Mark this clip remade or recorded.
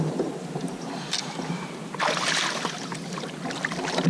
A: recorded